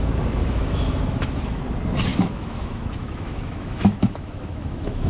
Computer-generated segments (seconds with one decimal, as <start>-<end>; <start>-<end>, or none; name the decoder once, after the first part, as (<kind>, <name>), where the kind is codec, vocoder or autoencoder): 0.4-1.6 (autoencoder, DAC-VAE); 2.1-5.1